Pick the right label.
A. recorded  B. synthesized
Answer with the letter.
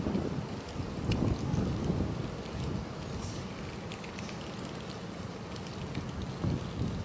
A